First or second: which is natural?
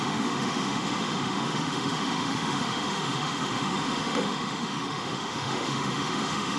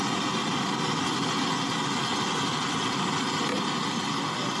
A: second